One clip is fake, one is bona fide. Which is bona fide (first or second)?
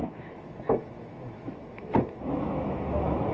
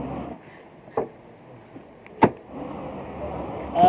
second